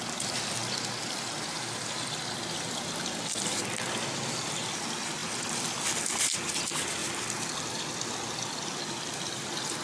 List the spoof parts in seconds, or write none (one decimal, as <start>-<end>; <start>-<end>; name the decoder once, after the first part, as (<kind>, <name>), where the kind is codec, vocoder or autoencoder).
none